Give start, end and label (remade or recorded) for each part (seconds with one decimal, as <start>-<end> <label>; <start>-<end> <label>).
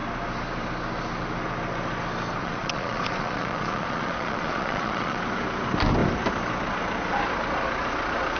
0.0-2.4 recorded; 2.4-5.2 remade; 5.2-8.4 recorded